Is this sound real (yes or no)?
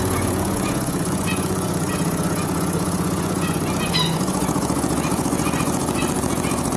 no